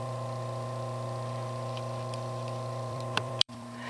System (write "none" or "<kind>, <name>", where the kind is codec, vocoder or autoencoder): vocoder, BigVGAN v2